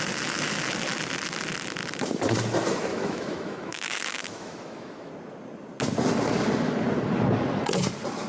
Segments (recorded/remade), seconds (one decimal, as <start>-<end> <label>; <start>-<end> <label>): 0.0-2.9 recorded; 2.9-5.1 remade; 5.1-8.3 recorded